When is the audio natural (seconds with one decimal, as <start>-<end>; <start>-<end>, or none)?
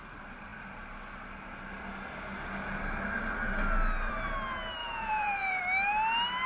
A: 0.0-4.8; 5.6-6.5